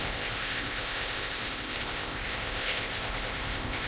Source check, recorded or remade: remade